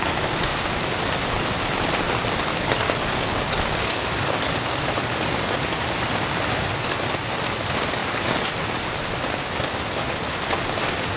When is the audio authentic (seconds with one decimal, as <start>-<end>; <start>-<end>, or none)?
0.0-2.5; 5.8-8.0; 8.5-11.2

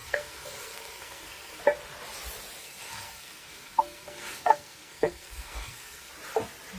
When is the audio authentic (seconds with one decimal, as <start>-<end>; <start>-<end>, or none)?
1.6-2.6; 6.1-6.8

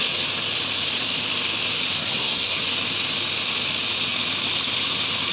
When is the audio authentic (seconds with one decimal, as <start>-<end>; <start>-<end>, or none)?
0.0-2.0; 2.6-5.3

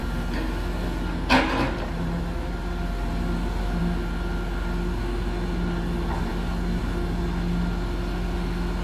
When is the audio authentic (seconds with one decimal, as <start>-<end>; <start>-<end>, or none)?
0.0-8.8

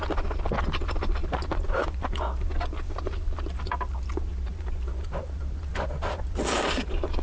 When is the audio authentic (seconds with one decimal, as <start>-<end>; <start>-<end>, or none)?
0.0-7.2

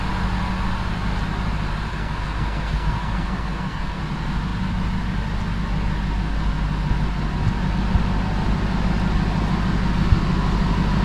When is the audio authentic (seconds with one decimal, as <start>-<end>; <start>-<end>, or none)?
0.0-1.9; 4.0-11.0